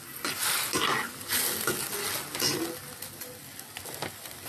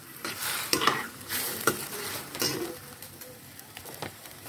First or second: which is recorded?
first